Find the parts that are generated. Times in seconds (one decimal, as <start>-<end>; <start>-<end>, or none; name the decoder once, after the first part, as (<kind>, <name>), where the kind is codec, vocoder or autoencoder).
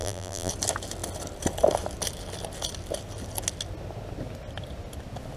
0.0-0.5 (vocoder, BigVGAN v2)